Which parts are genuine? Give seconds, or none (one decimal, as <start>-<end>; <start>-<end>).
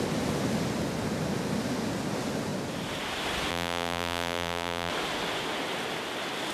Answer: 0.0-3.5; 4.9-6.5